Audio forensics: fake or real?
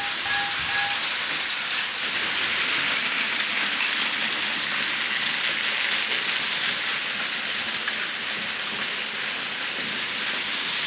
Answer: real